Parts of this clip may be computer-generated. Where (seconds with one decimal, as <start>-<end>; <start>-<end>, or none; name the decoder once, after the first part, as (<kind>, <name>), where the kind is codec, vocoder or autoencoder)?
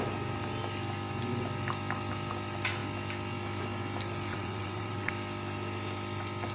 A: 4.3-5.1 (vocoder, WaveNeXt)